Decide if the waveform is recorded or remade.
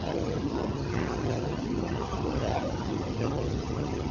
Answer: remade